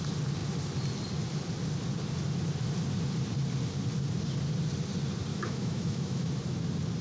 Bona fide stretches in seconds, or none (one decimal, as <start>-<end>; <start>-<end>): 0.0-5.3; 6.3-7.0